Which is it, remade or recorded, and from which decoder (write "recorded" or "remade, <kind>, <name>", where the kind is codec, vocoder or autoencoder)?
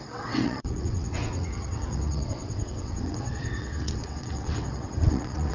remade, vocoder, WaveNeXt